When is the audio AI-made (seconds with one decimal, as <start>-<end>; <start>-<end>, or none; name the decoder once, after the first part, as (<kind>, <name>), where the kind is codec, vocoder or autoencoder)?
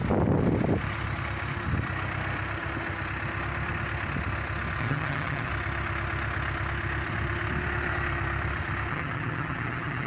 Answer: 4.8-5.5 (vocoder, HiFi-GAN); 8.9-10.1